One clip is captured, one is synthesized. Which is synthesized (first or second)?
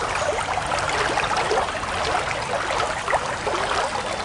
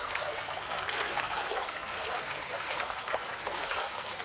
second